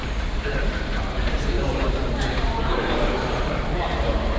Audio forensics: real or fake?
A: fake